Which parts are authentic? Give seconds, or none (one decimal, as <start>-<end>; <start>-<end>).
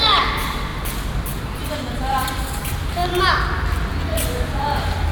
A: 0.7-1.4; 3.0-5.1